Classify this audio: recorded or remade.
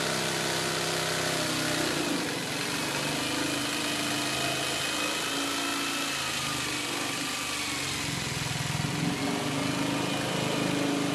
recorded